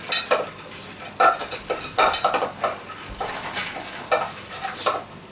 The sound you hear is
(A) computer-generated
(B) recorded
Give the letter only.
B